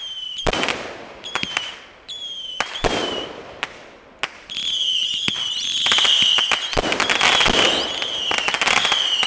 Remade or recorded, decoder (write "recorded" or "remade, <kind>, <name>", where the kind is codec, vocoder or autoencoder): recorded